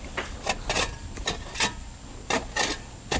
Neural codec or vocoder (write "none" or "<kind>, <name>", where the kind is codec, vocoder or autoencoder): none